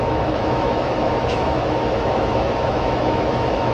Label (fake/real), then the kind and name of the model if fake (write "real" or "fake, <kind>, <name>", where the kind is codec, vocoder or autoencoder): fake, autoencoder, DAC-VAE